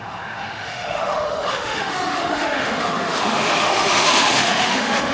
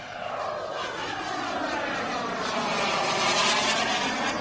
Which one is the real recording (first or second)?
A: second